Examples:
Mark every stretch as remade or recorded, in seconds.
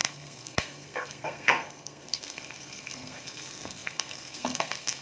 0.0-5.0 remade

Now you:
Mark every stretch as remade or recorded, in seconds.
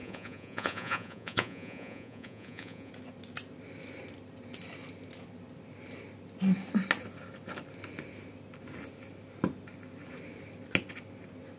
0.0-2.9 remade; 2.9-11.6 recorded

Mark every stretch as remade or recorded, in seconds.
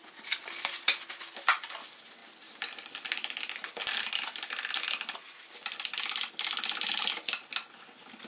0.0-8.3 recorded